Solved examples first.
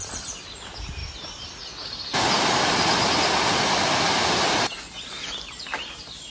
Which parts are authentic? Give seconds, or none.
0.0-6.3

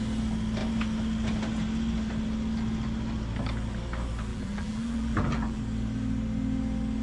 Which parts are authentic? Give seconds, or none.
0.0-4.3; 5.6-7.0

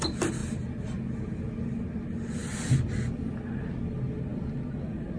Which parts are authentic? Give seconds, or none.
0.0-0.4; 1.4-5.2

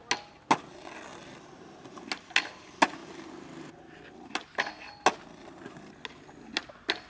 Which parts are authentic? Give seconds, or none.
0.0-7.1

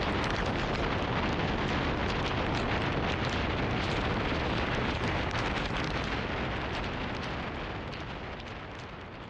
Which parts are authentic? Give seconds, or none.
0.0-9.3

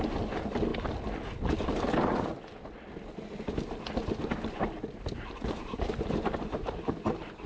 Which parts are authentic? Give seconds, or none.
0.0-4.2; 6.8-7.5

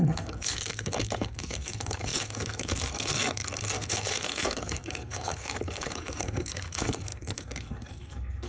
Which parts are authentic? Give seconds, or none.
none

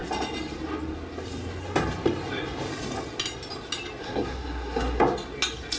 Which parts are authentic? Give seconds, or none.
0.0-4.0; 5.0-5.8